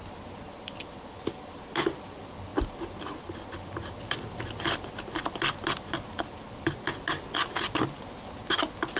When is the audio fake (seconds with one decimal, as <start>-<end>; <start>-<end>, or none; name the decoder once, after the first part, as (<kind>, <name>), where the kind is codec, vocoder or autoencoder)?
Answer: none